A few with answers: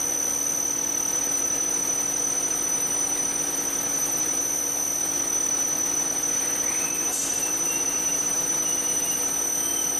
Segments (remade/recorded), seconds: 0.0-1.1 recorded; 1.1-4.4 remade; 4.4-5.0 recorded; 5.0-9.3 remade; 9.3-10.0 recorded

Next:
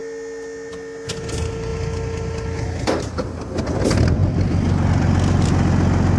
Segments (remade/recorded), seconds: 0.0-6.2 recorded

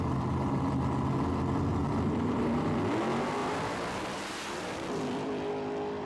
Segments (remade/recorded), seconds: 0.0-1.8 recorded; 1.8-2.8 remade; 2.8-3.4 recorded; 3.4-5.5 remade; 5.5-6.1 recorded

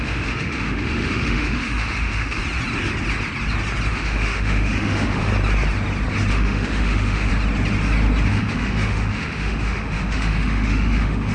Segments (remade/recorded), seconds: 0.0-2.4 remade; 2.4-3.9 recorded; 3.9-5.3 remade; 5.3-6.3 recorded; 6.3-7.3 remade; 7.3-8.3 recorded; 8.3-11.3 remade

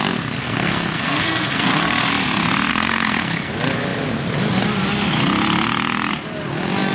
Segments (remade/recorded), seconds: 0.0-0.4 recorded; 0.4-2.1 remade; 2.1-2.7 recorded; 2.7-3.5 remade; 3.5-6.9 recorded